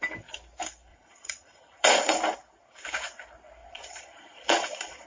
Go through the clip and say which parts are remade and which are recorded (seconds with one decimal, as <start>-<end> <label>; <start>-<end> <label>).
0.0-0.9 recorded; 0.9-2.1 remade; 2.1-3.6 recorded; 3.6-5.1 remade